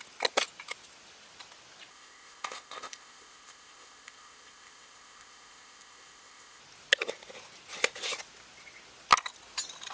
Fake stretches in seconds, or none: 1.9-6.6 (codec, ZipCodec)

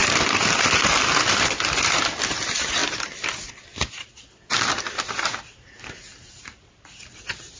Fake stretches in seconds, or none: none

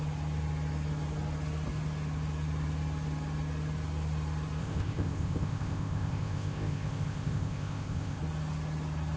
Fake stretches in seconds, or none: 4.6-8.2 (codec, ZipCodec)